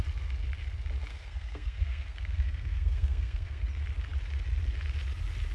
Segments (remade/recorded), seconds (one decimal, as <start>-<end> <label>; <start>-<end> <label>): 0.0-1.1 recorded; 1.1-3.6 remade; 3.6-5.5 recorded